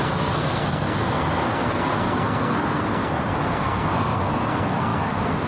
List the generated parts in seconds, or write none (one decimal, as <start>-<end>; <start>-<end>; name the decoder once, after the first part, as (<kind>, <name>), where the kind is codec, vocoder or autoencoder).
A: 0.0-5.5 (codec, SNAC)